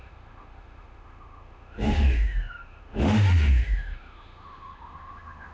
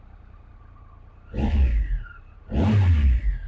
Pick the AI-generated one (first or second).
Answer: first